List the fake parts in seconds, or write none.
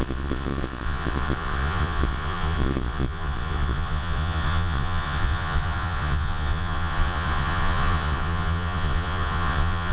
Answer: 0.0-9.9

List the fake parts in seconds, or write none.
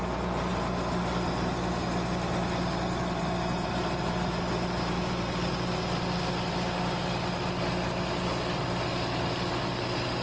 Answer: none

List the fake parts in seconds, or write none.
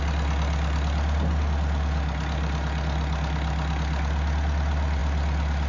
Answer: none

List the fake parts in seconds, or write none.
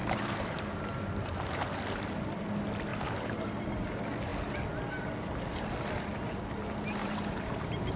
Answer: 0.0-1.6; 2.9-3.7; 7.0-8.0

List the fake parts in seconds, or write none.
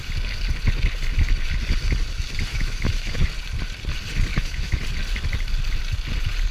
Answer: 2.5-3.1; 4.3-4.8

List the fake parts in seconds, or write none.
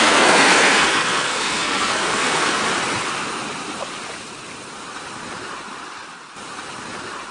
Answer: 0.0-2.6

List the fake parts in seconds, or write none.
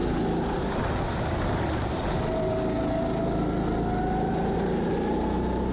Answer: none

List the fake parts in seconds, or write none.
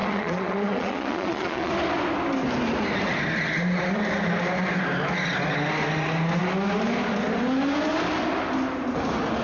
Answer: 0.0-1.7